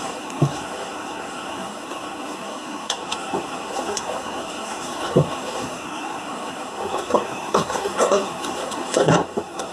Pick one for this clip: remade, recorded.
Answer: remade